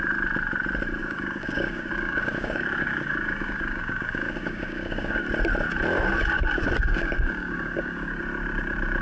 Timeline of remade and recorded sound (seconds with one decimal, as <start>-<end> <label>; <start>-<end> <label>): 0.0-1.0 recorded; 1.0-5.2 remade; 5.2-6.9 recorded; 6.9-8.2 remade; 8.2-9.0 recorded